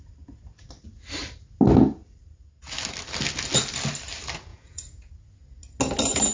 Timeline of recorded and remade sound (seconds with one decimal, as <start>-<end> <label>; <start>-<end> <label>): 0.0-4.5 recorded; 4.5-5.1 remade; 5.1-6.3 recorded